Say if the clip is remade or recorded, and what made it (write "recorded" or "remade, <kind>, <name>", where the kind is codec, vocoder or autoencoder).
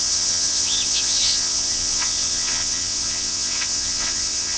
remade, vocoder, WaveNeXt